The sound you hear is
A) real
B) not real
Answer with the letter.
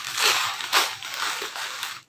B